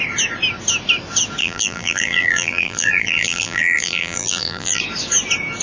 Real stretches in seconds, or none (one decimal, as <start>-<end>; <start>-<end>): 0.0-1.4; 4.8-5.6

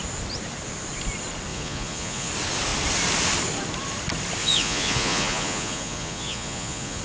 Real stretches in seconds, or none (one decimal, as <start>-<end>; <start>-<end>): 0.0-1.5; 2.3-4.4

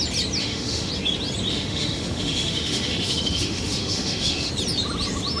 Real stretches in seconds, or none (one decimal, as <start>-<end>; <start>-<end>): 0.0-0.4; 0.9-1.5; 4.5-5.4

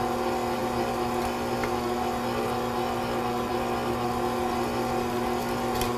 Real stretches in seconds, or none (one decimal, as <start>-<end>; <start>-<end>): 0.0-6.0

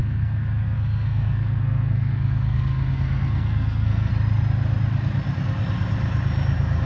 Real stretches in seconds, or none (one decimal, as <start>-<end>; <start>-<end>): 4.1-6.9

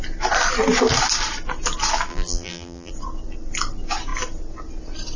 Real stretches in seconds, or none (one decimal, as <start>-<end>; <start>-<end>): 0.0-2.1; 2.9-5.2

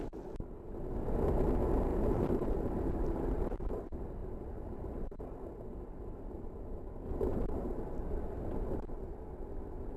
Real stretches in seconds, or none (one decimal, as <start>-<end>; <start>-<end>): 0.0-1.9; 3.8-4.2; 4.9-7.3; 8.1-10.0

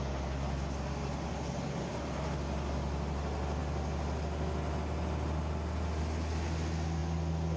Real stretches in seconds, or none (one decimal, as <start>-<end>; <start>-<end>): 0.0-7.6